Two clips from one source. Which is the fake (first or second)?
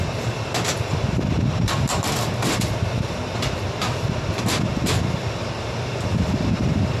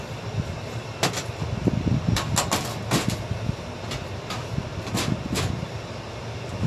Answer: first